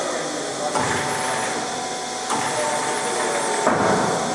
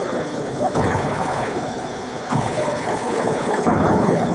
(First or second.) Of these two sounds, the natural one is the first